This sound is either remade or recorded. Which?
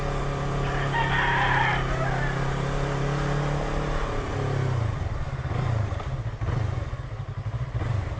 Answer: recorded